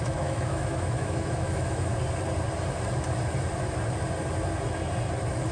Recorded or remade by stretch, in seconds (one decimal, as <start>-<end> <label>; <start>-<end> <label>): 0.0-1.9 remade; 1.9-5.5 recorded